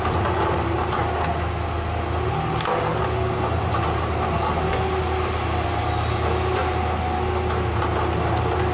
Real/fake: real